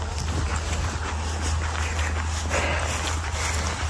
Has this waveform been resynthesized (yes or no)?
no